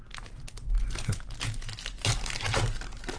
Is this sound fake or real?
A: real